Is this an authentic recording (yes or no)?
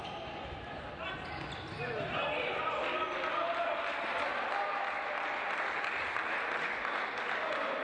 yes